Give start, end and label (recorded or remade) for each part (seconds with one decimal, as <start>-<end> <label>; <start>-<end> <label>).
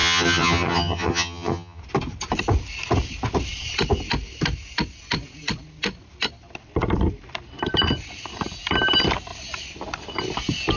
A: 0.0-1.8 remade; 1.8-10.8 recorded